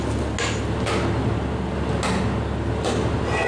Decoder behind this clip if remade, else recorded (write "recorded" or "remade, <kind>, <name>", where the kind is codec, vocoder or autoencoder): recorded